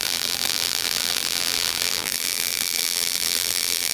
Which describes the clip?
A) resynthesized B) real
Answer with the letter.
A